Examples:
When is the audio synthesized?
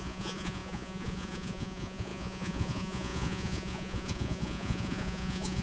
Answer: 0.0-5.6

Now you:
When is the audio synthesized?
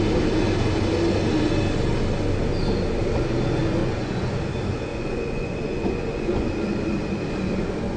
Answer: 3.8-4.4; 4.9-6.5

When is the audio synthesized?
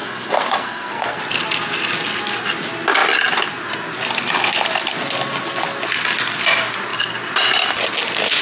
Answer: 0.0-1.2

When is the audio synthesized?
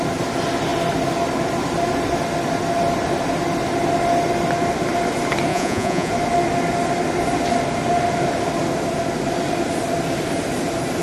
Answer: 5.5-6.1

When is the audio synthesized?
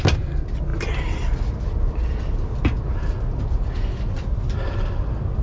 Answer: none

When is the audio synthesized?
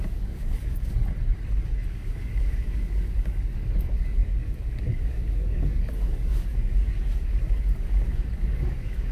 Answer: 0.0-1.0; 1.9-9.1